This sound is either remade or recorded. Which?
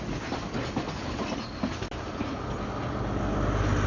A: recorded